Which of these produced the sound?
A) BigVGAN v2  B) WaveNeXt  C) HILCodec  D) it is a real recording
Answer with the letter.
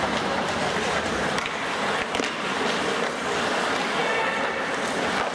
D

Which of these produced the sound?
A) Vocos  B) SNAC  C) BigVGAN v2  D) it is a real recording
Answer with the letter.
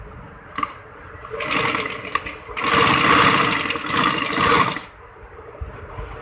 D